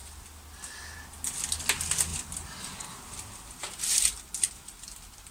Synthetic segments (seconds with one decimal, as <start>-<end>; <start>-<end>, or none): 2.1-5.3